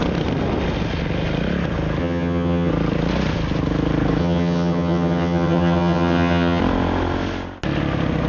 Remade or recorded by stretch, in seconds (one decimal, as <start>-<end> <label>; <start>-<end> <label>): 0.0-2.0 recorded; 2.0-2.7 remade; 2.7-4.2 recorded; 4.2-6.6 remade; 6.6-8.3 recorded